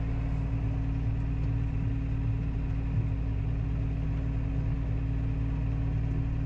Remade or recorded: recorded